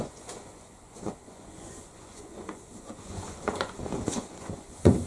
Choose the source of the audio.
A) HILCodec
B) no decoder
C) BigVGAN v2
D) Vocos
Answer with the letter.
D